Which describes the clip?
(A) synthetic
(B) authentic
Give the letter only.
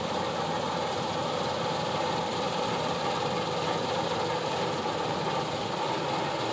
B